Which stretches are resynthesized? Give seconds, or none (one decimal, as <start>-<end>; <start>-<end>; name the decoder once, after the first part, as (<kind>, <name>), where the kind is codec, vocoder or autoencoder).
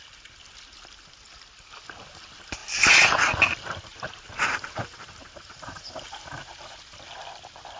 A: 3.9-6.8 (vocoder, BigVGAN v2)